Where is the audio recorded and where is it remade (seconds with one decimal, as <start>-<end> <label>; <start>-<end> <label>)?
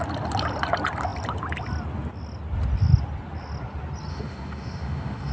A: 0.0-4.1 recorded; 4.1-5.3 remade